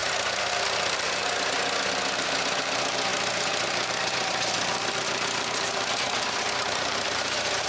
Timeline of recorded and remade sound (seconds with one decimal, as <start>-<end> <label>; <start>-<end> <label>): 0.0-1.9 recorded; 1.9-7.7 remade